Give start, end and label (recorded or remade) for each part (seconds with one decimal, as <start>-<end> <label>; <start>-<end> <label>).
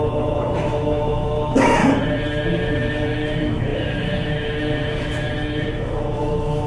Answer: 0.0-1.8 remade; 1.8-2.5 recorded; 2.5-6.7 remade